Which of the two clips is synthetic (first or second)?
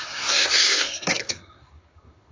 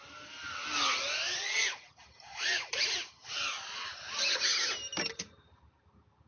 first